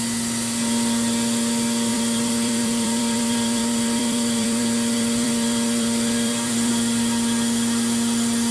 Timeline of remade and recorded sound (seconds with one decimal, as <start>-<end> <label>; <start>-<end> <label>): 0.0-1.9 recorded; 1.9-6.7 remade; 6.7-8.5 recorded